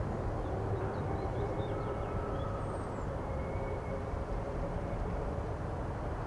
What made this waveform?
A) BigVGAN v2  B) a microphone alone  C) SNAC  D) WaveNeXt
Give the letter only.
A